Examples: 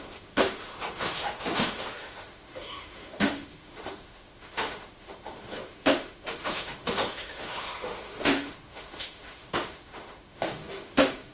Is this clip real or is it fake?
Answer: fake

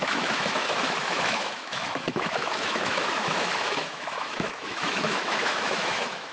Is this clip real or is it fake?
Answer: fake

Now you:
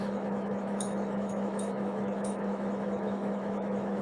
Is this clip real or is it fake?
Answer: fake